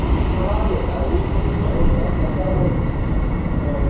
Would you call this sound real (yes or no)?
yes